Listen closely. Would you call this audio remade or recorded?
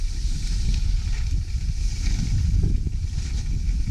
recorded